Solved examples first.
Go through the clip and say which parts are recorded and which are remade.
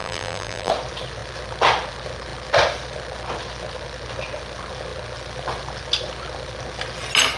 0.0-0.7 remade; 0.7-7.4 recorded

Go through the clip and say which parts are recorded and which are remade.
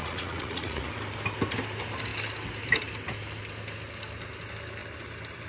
0.0-0.9 remade; 0.9-5.5 recorded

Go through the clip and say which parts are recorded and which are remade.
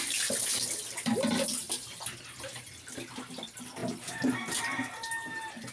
0.0-5.7 recorded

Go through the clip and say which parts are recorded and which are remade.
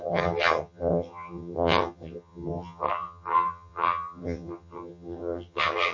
0.0-5.9 remade